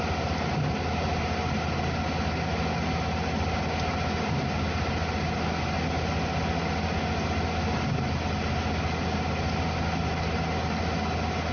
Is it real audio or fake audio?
real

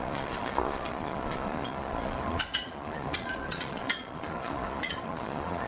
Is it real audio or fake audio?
fake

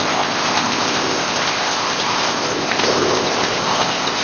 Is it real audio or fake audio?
fake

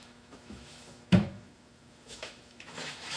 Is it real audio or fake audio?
fake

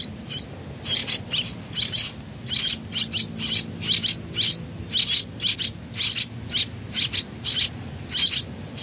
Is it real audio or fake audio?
real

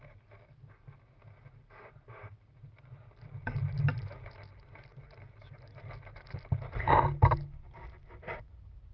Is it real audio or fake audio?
real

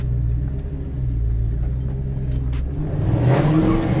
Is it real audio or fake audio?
real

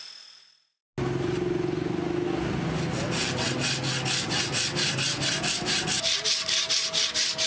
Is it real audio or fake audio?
real